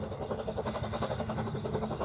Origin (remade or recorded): recorded